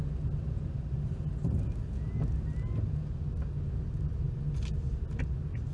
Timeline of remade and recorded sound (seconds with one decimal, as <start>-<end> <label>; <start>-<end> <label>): 0.0-5.7 recorded